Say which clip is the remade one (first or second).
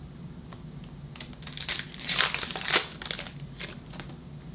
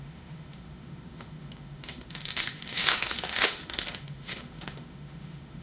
second